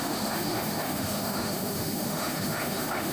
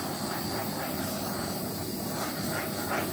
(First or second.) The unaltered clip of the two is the second